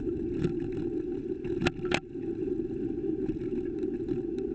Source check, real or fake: real